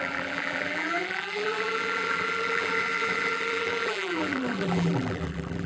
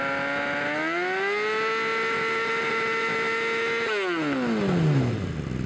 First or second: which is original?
second